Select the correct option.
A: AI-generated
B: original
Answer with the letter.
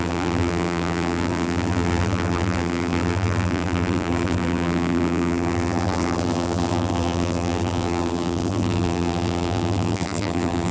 A